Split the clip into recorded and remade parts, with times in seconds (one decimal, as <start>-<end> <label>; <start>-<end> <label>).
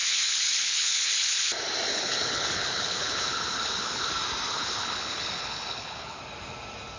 0.0-1.5 remade; 1.5-1.9 recorded; 1.9-4.1 remade; 4.1-4.5 recorded; 4.5-6.2 remade; 6.2-7.0 recorded